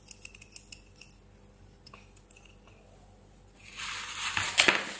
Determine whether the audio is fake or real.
real